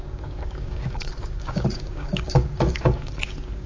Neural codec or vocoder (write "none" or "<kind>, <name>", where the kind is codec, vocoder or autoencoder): codec, DAC